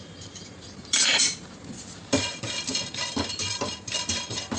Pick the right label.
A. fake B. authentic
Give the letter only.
A